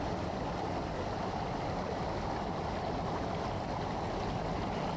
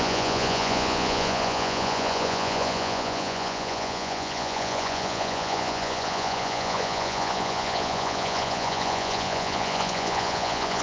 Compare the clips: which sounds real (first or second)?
first